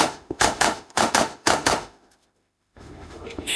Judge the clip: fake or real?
fake